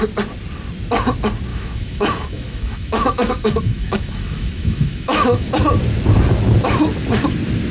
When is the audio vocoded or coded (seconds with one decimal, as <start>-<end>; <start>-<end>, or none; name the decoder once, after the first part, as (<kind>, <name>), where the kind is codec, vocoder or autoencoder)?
1.5-5.5 (autoencoder, DAC-VAE)